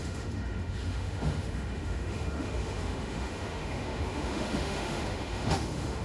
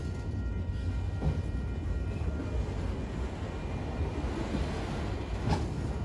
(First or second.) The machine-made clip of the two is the first